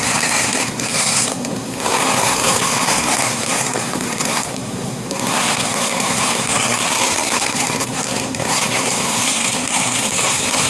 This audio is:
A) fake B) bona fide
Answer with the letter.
A